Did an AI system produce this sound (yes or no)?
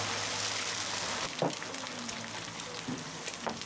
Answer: no